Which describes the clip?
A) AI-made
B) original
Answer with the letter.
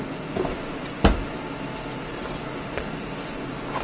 B